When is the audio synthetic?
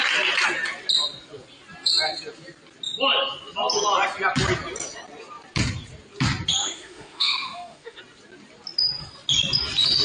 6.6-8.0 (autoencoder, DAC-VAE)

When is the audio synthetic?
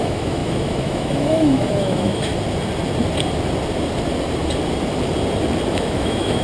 0.0-2.3 (autoencoder, DAC-VAE); 5.7-6.4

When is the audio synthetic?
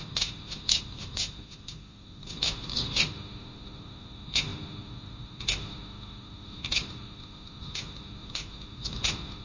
0.0-9.4 (autoencoder, DAC-VAE)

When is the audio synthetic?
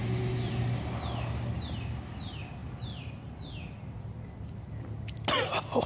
none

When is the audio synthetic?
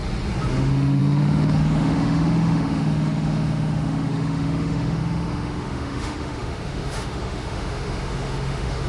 0.5-8.9 (autoencoder, DAC-VAE)